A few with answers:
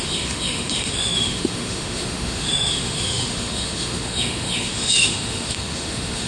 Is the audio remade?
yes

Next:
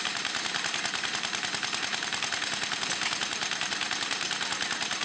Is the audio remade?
yes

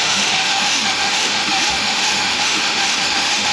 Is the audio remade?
yes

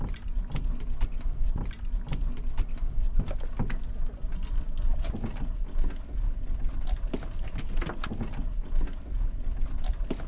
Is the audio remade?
no